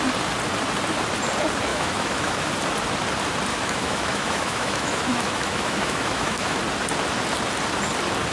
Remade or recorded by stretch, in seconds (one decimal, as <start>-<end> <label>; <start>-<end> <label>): 0.0-1.7 recorded; 1.7-2.5 remade; 2.5-3.5 recorded; 3.5-6.6 remade; 6.6-8.3 recorded

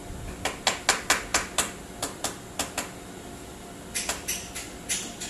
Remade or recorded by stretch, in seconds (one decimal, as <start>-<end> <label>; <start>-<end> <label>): 0.0-5.3 recorded

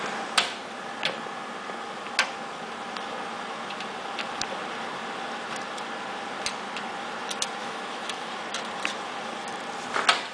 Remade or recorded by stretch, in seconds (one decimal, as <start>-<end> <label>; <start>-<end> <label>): 0.0-7.6 recorded; 7.6-8.3 remade; 8.3-10.3 recorded

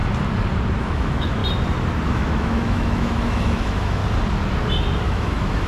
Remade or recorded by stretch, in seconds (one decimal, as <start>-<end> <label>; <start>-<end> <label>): 0.0-0.8 recorded; 0.8-1.4 remade; 1.4-2.1 recorded; 2.1-4.0 remade; 4.0-5.0 recorded; 5.0-5.7 remade

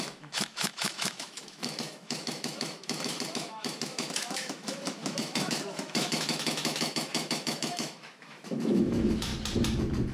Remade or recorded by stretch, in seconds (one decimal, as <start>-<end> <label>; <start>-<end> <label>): 0.0-9.3 remade; 9.3-10.1 recorded

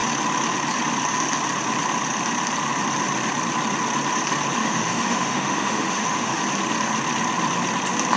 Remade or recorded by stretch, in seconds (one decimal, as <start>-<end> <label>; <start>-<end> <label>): 0.0-4.6 recorded; 4.6-6.4 remade; 6.4-8.2 recorded